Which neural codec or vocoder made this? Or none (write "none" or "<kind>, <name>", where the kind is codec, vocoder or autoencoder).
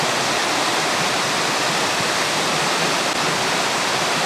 none